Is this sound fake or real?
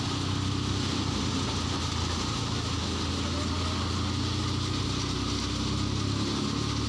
real